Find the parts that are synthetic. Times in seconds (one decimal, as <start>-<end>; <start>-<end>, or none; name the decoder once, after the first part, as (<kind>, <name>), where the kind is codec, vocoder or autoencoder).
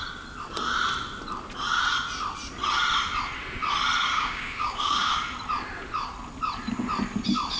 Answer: 4.1-5.1 (codec, DAC)